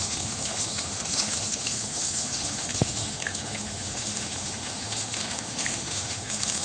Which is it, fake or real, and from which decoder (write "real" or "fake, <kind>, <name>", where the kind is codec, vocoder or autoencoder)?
fake, autoencoder, DAC-VAE